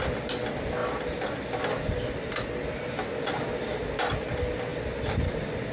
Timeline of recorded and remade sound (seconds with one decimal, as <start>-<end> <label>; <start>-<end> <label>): 0.0-5.7 recorded